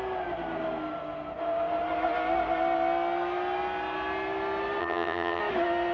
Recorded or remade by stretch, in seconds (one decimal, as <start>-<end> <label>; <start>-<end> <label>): 0.0-4.8 recorded; 4.8-5.4 remade; 5.4-5.9 recorded